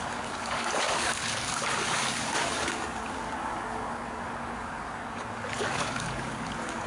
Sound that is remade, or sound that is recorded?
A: remade